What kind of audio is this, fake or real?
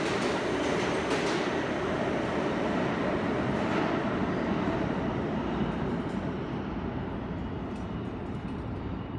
real